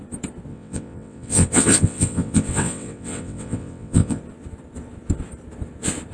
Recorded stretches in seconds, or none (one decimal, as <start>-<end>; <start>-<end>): 0.0-0.5; 4.2-6.1